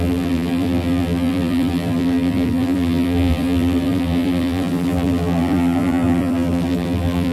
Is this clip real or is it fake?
fake